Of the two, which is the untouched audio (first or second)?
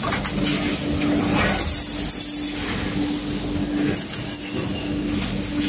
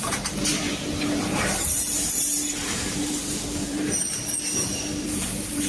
first